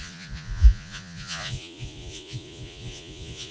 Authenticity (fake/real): fake